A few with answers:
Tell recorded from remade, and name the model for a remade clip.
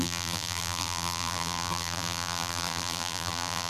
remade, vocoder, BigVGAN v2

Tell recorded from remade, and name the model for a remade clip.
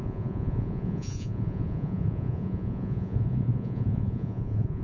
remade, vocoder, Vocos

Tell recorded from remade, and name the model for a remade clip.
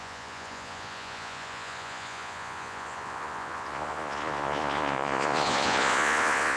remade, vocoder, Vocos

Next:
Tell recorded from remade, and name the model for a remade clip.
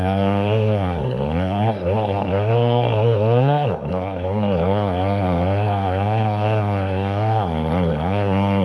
remade, codec, SNAC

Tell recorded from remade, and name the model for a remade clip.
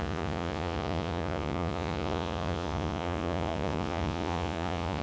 remade, vocoder, Vocos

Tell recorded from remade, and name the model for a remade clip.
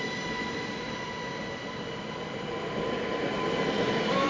recorded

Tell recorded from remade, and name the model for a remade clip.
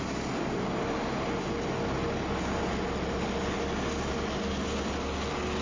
recorded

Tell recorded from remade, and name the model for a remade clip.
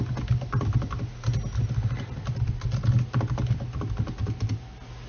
recorded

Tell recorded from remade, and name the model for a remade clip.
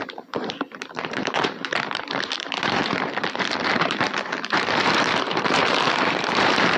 remade, vocoder, BigVGAN v2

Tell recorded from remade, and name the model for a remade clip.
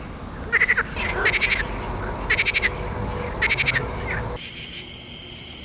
recorded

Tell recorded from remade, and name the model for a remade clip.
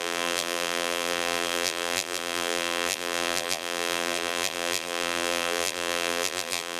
remade, vocoder, BigVGAN v2